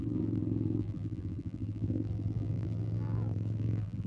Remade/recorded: remade